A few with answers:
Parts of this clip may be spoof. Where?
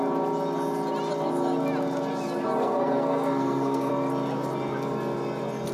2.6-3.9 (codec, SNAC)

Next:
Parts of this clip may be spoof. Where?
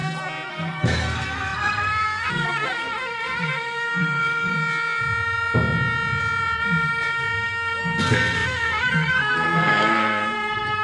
0.5-4.5 (codec, SNAC); 7.8-10.8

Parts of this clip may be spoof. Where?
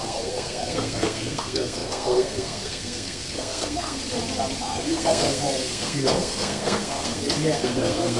0.0-4.0 (codec, SNAC); 4.6-8.2